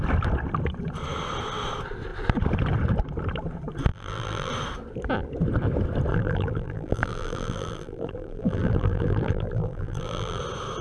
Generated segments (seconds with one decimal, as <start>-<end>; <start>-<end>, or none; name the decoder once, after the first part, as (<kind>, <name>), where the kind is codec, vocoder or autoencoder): 3.9-4.5 (vocoder, BigVGAN v2); 6.1-10.4